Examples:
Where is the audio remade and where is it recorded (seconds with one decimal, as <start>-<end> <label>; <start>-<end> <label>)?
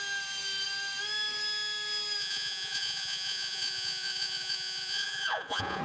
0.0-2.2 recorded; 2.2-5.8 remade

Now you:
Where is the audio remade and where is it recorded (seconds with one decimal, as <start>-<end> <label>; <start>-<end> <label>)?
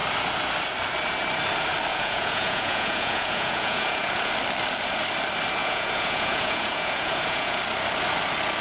0.0-1.9 recorded; 1.9-4.3 remade; 4.3-5.6 recorded; 5.6-7.6 remade; 7.6-8.6 recorded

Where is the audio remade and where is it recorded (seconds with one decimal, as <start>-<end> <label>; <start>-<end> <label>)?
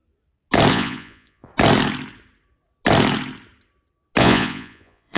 0.0-0.7 recorded; 0.7-1.5 remade; 1.5-4.2 recorded; 4.2-5.2 remade